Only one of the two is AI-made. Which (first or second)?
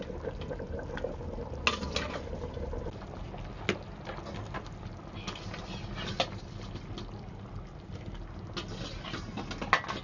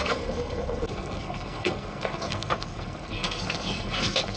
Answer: second